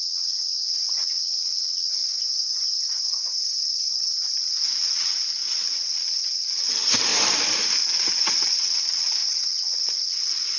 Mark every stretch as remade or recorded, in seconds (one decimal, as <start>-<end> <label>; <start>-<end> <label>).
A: 0.0-2.0 remade; 2.0-4.4 recorded; 4.4-7.1 remade; 7.1-7.8 recorded; 7.8-10.6 remade